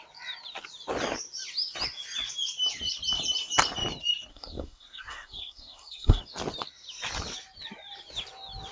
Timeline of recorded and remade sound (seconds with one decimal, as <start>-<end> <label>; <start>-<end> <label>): 0.0-4.3 recorded; 4.3-6.2 remade; 6.2-8.7 recorded